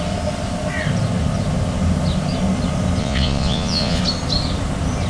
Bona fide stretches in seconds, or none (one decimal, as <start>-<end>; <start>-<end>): 0.0-3.0; 4.0-5.1